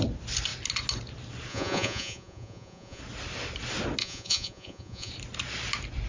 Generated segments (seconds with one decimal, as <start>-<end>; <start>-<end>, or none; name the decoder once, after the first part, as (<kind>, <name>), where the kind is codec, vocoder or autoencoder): 1.5-3.0 (vocoder, Vocos); 4.0-5.1